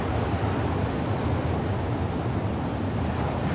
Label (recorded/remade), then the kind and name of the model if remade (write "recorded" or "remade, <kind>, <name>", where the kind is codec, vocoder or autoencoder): recorded